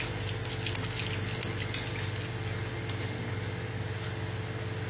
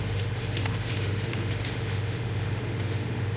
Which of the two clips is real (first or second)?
first